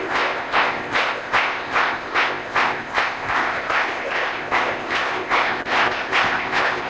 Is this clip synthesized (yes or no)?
yes